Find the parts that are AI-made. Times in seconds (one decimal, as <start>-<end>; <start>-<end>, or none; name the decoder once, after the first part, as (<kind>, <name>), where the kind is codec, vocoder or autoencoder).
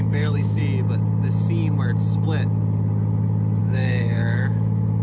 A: 0.0-0.6 (autoencoder, DAC-VAE); 3.6-5.0